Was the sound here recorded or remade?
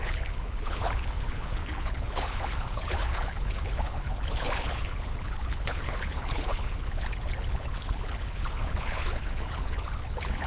remade